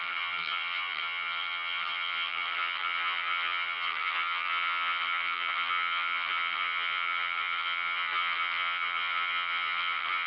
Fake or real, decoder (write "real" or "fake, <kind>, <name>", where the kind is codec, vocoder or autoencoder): fake, vocoder, HiFi-GAN